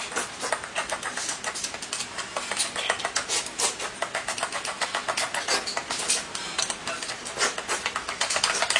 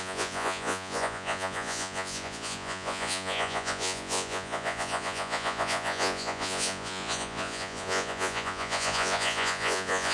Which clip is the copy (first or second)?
second